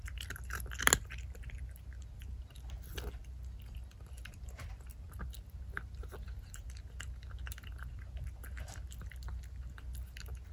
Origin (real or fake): real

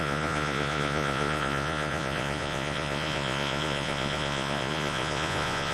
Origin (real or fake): fake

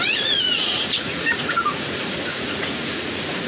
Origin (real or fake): fake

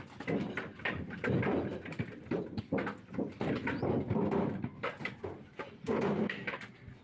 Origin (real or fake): real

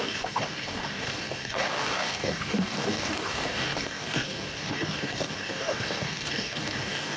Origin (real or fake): fake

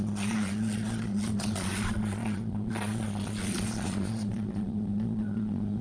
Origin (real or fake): fake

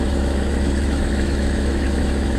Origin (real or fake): fake